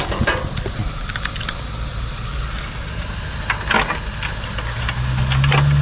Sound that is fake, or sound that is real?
real